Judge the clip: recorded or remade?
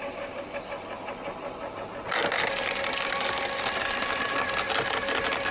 recorded